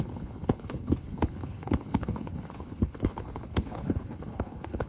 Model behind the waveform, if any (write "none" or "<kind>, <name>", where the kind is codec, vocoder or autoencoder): codec, HILCodec